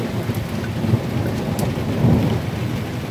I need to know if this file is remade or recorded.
recorded